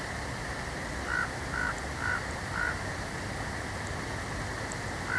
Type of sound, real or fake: real